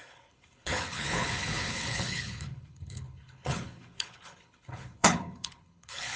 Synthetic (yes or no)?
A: yes